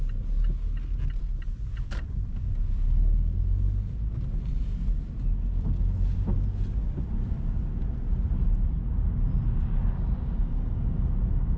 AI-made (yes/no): no